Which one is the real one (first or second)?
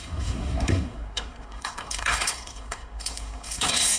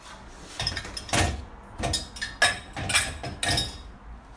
second